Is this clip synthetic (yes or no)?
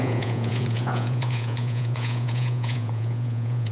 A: yes